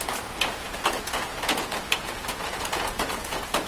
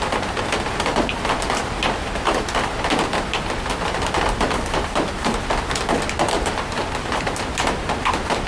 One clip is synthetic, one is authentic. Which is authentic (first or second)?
second